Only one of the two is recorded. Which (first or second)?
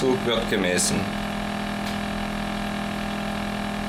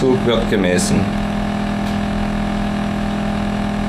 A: first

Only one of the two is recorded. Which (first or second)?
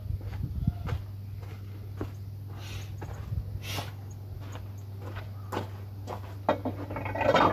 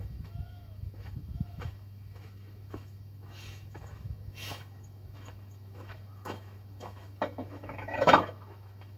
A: first